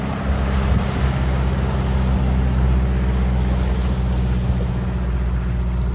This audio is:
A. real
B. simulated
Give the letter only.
A